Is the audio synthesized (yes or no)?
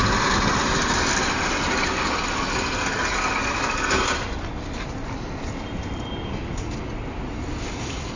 no